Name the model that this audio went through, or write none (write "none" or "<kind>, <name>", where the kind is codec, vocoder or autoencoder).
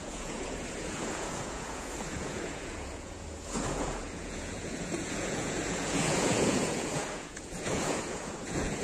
vocoder, Vocos